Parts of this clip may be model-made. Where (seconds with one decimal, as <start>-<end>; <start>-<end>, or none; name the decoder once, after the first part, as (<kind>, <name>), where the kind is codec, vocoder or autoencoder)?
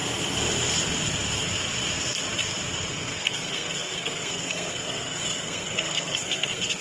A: 2.9-6.8 (codec, SNAC)